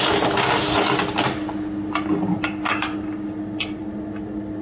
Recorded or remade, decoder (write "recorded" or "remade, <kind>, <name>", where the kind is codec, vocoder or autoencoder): recorded